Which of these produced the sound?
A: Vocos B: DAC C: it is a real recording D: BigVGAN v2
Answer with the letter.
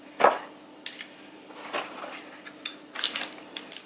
C